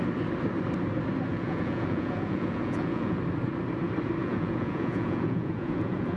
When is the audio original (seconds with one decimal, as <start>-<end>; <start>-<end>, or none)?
0.0-1.3; 3.2-4.2